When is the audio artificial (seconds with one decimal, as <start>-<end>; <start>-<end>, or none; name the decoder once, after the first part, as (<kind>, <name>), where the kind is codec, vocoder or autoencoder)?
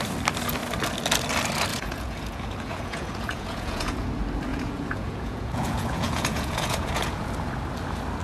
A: 1.7-4.1 (vocoder, Vocos); 4.5-7.3